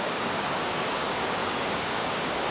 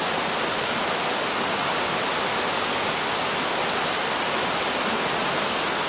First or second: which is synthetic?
first